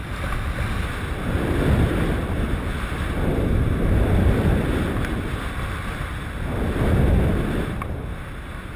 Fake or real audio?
fake